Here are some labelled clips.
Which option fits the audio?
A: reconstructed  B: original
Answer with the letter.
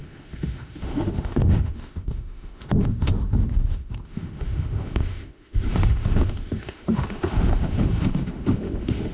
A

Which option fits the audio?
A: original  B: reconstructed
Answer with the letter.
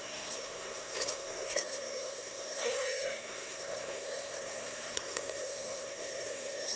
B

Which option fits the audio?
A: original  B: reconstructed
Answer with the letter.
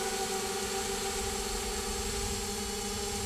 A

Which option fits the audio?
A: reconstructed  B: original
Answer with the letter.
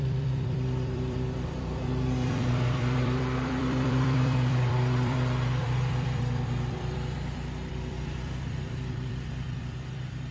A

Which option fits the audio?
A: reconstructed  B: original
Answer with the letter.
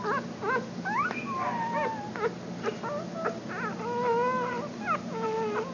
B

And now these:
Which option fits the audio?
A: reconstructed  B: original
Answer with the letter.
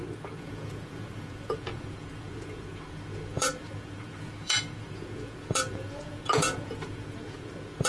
A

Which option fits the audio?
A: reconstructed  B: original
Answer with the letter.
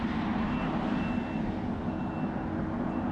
B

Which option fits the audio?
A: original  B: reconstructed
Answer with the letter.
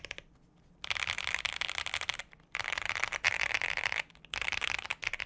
A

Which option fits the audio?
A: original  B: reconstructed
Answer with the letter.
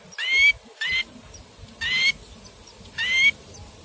A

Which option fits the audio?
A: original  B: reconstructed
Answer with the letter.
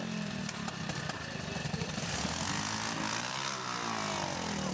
A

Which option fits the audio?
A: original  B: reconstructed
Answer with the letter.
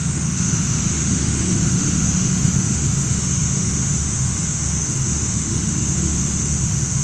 B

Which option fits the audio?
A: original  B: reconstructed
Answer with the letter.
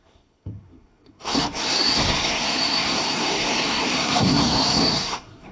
B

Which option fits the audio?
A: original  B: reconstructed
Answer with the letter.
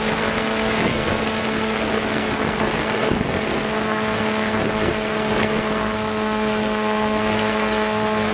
B